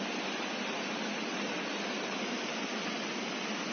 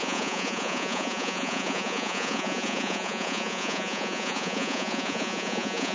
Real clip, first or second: first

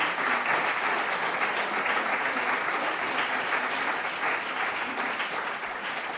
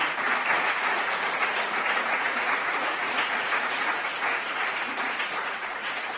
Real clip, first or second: first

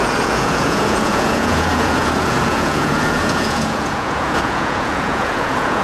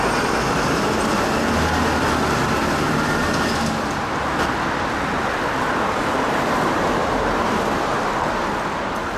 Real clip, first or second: second